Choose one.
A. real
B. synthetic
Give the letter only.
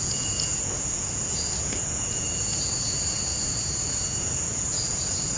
B